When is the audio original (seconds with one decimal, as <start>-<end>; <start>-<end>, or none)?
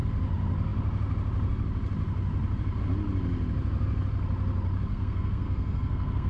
0.0-4.9